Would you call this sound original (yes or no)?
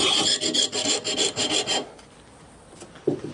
yes